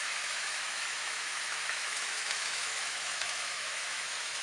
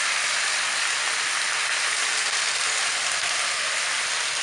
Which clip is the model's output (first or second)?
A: first